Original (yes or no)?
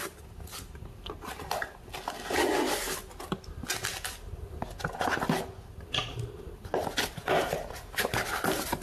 yes